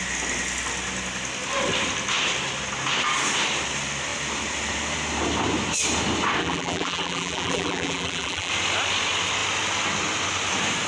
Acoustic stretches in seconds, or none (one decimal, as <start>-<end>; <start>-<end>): 0.0-6.4; 8.5-10.9